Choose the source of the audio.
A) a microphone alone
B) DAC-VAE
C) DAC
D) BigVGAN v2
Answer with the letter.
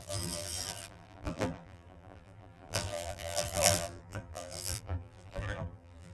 D